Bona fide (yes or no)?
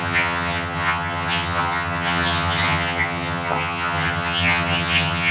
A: no